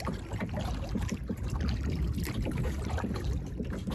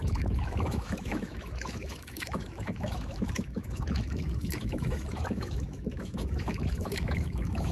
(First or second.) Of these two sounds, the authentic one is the first